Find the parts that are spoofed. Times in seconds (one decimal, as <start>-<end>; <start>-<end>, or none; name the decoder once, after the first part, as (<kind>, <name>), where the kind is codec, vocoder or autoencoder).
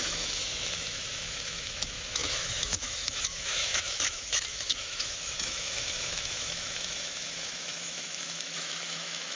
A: 0.0-9.3 (autoencoder, DAC-VAE)